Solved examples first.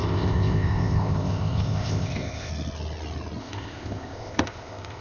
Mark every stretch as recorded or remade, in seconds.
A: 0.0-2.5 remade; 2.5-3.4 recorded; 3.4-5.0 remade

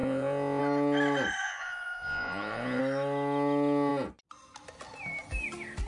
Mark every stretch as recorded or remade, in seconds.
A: 0.0-0.6 remade; 0.6-1.4 recorded; 1.4-2.8 remade; 2.8-5.9 recorded

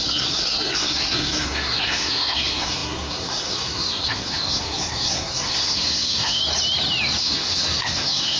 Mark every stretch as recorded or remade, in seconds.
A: 0.0-6.4 remade; 6.4-7.2 recorded; 7.2-8.4 remade

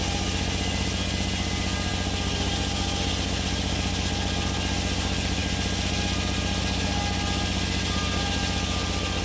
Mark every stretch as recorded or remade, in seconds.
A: 0.0-9.2 recorded

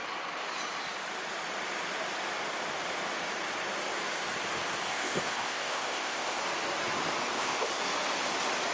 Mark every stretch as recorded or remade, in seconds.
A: 0.0-4.9 recorded; 4.9-6.4 remade; 6.4-7.2 recorded; 7.2-7.8 remade; 7.8-8.7 recorded

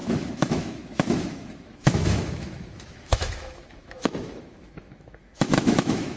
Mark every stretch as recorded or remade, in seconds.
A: 0.0-6.2 remade

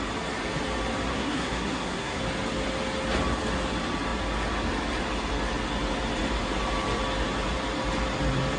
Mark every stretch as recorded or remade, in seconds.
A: 0.0-1.1 recorded; 1.1-2.2 remade; 2.2-8.6 recorded

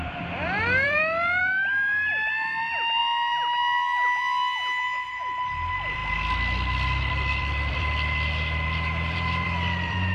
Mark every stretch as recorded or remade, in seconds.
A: 0.0-3.0 remade; 3.0-5.1 recorded; 5.1-10.1 remade